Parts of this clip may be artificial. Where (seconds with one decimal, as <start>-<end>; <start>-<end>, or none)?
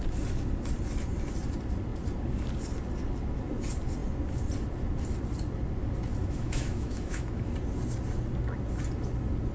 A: 6.2-7.5